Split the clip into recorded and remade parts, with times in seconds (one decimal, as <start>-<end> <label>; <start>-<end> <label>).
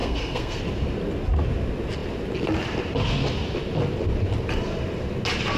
0.0-0.6 remade; 0.6-5.6 recorded